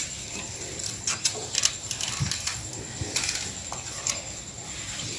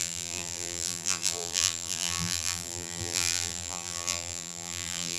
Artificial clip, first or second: second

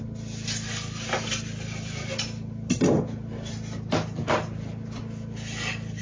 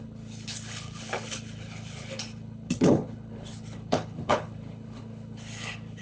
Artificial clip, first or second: second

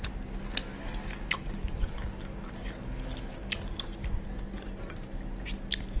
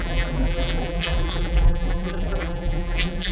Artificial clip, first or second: second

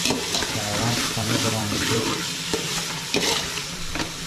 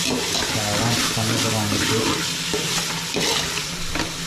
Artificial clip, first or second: first